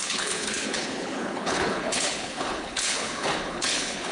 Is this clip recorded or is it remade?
remade